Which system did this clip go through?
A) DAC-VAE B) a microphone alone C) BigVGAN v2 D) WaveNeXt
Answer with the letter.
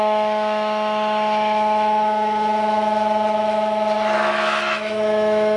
A